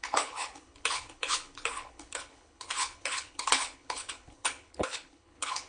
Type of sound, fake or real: fake